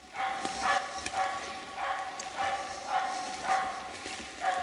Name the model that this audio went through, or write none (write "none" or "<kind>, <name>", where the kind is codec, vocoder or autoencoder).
none